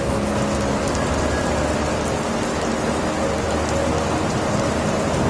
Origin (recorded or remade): recorded